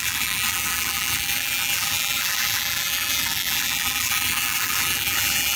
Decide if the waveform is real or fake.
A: fake